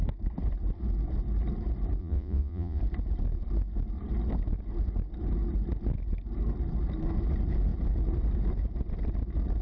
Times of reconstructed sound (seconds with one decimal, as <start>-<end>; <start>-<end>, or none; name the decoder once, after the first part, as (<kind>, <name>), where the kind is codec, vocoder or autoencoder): 2.0-2.8 (vocoder, Vocos)